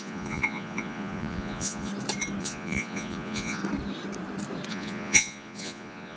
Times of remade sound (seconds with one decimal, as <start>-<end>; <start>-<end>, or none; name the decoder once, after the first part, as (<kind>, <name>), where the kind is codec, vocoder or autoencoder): 0.0-1.9 (vocoder, Vocos); 2.4-3.6; 4.7-6.2

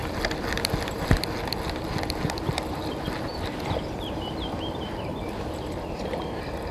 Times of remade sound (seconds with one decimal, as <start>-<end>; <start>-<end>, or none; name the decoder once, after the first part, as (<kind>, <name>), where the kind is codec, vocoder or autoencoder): 0.0-6.7 (vocoder, BigVGAN v2)